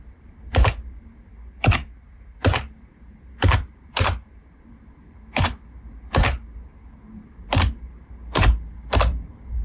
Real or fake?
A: fake